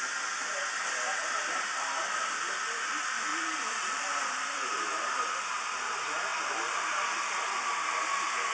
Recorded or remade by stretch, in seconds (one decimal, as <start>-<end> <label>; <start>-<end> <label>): 0.0-3.3 recorded; 3.3-5.5 remade; 5.5-6.3 recorded; 6.3-8.0 remade; 8.0-8.5 recorded